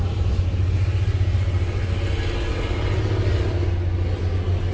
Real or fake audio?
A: real